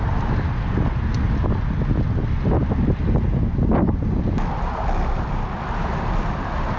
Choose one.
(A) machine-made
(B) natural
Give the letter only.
B